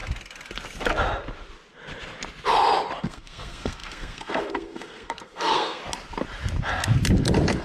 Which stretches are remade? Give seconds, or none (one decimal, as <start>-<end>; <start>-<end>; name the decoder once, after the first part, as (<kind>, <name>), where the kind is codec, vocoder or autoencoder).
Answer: 3.0-5.8 (codec, SNAC)